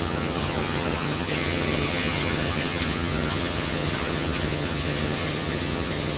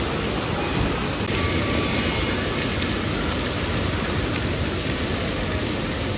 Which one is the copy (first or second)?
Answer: first